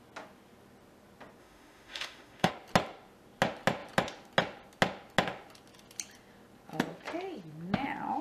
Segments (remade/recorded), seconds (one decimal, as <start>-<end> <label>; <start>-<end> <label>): 0.0-1.4 recorded; 1.4-2.5 remade; 2.5-8.2 recorded